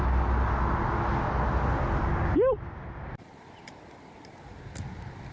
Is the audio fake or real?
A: real